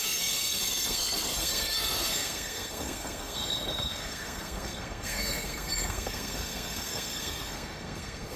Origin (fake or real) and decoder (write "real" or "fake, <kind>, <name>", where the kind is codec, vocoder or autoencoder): fake, codec, SNAC